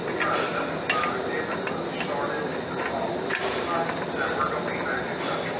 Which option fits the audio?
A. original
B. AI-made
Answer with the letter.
A